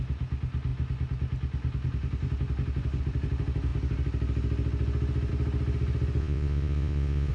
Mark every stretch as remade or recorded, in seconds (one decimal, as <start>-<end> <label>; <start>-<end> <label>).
0.0-6.2 recorded; 6.2-7.3 remade